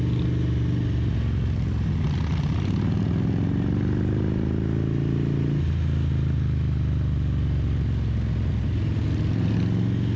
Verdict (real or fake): real